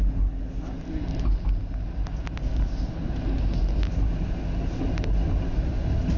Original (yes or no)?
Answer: yes